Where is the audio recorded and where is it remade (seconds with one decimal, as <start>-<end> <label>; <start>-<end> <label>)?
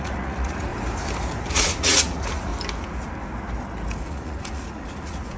0.0-0.7 remade; 0.7-1.5 recorded; 1.5-2.5 remade; 2.5-4.0 recorded; 4.0-5.4 remade